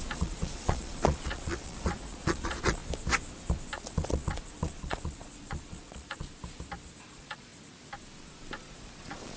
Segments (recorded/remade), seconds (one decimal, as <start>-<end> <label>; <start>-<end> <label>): 0.0-2.8 remade; 2.8-3.9 recorded; 3.9-6.3 remade; 6.3-7.1 recorded; 7.1-7.5 remade; 7.5-8.6 recorded; 8.6-9.4 remade